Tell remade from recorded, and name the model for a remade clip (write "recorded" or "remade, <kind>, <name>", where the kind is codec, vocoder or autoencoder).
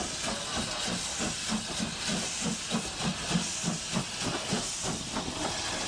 recorded